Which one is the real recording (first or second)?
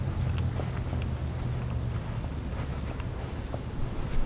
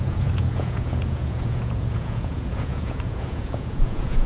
first